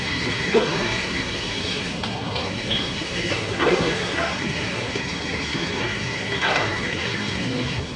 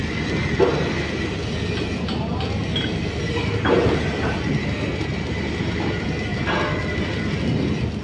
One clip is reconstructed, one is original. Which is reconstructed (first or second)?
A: first